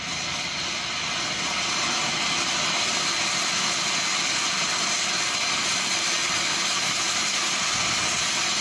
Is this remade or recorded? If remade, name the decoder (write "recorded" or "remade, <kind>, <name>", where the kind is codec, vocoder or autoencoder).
recorded